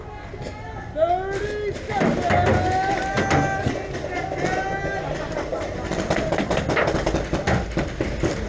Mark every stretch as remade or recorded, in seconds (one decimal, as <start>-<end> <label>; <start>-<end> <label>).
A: 0.0-8.5 recorded